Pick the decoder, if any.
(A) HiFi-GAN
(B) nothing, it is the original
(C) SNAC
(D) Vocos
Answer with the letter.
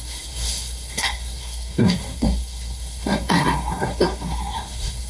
C